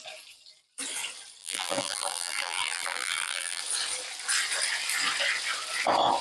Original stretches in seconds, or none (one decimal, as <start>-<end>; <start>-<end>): 0.0-1.4; 3.6-6.2